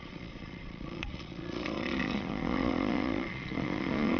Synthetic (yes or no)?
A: yes